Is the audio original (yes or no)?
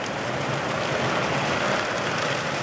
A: yes